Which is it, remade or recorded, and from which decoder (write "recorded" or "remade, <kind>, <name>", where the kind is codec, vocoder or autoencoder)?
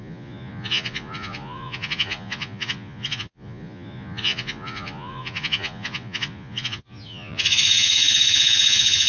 remade, vocoder, Vocos